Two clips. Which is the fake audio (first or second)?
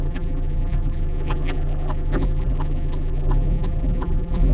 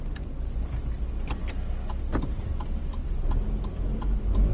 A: first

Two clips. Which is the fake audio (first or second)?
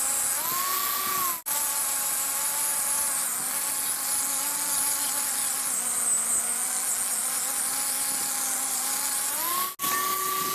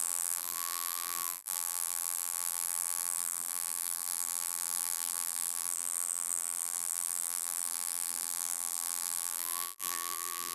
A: second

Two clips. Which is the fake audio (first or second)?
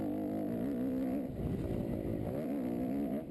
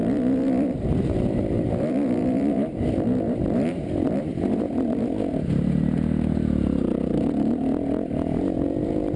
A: second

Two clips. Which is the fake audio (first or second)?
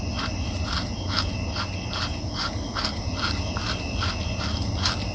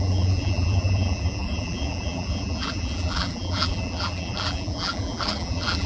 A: second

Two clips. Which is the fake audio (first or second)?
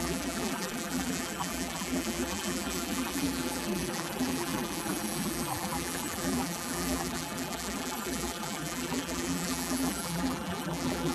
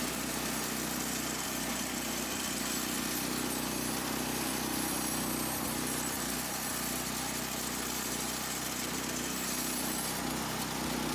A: first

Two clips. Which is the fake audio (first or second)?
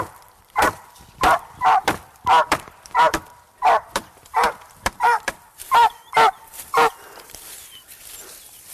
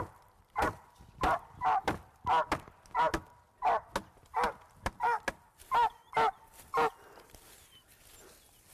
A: first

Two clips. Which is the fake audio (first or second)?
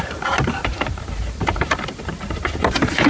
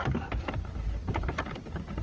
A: first